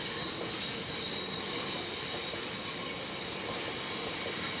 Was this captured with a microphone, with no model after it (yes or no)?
yes